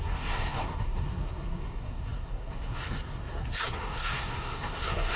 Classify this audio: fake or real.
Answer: fake